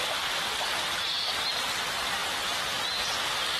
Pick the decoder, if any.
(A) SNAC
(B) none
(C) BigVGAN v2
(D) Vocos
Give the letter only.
B